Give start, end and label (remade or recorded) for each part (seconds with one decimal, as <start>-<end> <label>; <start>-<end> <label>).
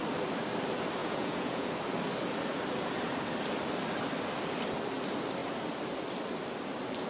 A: 0.0-1.0 recorded; 1.0-1.7 remade; 1.7-7.1 recorded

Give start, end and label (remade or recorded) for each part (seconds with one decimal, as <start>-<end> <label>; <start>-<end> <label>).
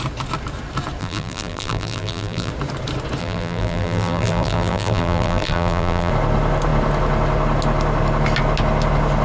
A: 0.0-1.0 recorded; 1.0-2.5 remade; 2.5-3.2 recorded; 3.2-6.1 remade; 6.1-9.2 recorded